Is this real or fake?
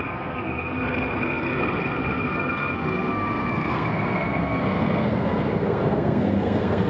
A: fake